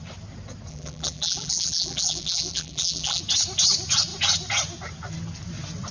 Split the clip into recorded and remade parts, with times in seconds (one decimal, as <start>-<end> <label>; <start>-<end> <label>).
0.0-0.7 recorded; 0.7-3.2 remade; 3.2-5.9 recorded